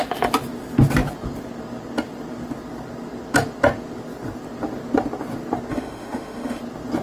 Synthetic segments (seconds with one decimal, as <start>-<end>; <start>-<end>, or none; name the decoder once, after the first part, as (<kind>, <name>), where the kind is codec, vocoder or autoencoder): 5.7-6.6 (autoencoder, DAC-VAE)

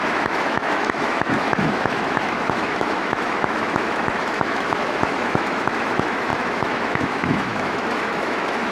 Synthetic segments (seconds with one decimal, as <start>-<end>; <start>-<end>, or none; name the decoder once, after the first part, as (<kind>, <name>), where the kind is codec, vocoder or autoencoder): 0.0-8.7 (autoencoder, DAC-VAE)

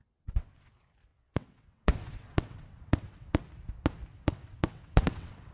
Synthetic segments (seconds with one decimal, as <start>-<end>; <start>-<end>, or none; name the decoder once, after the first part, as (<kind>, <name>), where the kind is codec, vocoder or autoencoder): 0.0-0.7 (vocoder, WaveNeXt); 1.1-3.4; 4.1-5.5

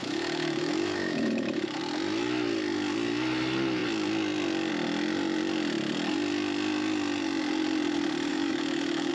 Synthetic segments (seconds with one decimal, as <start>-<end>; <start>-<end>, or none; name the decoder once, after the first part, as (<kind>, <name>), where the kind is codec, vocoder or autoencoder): 0.0-1.8 (autoencoder, DAC-VAE); 8.3-9.1